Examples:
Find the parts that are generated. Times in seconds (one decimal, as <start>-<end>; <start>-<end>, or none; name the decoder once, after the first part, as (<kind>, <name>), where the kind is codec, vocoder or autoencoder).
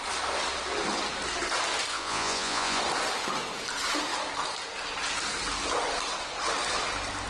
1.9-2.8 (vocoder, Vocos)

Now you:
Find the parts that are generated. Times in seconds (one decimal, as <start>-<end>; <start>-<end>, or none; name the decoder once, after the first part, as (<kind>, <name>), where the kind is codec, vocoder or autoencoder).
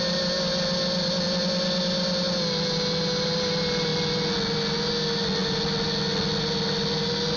none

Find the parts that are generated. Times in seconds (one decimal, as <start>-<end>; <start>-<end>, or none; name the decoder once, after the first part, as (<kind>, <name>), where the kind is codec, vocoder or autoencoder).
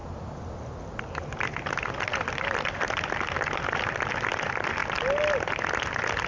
none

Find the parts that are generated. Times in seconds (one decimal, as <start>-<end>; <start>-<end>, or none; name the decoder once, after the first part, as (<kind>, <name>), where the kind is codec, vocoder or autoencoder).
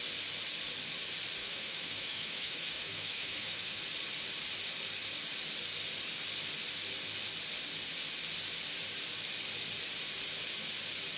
1.4-3.8 (autoencoder, DAC-VAE)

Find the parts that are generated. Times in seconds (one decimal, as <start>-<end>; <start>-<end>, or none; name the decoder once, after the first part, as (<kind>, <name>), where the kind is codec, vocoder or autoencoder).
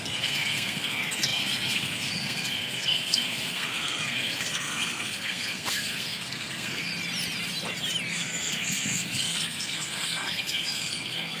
0.0-6.9 (codec, SNAC); 8.1-11.4